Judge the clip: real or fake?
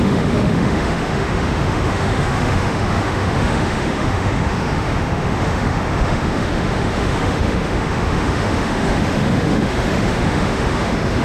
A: fake